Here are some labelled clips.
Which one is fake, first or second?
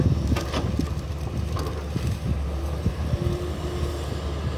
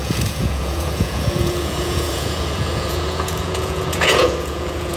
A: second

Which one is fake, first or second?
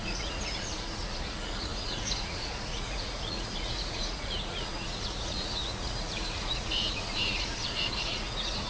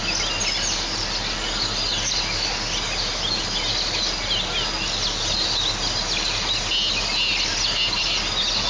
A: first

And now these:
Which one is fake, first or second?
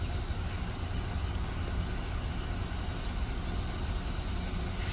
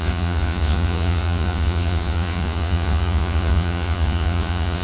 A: second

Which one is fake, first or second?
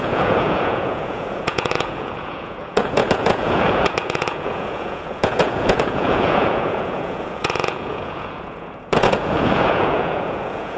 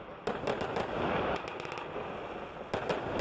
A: first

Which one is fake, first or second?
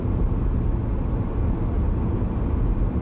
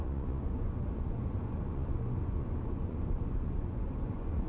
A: second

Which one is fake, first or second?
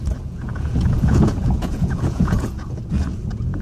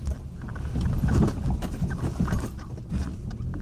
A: first